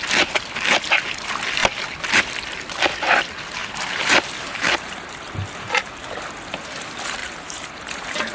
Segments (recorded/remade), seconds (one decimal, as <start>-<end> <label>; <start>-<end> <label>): 0.0-3.6 recorded; 3.6-5.8 remade; 5.8-7.2 recorded; 7.2-8.3 remade